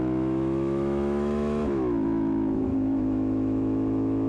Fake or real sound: fake